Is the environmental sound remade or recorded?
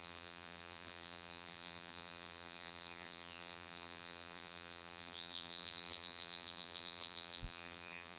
remade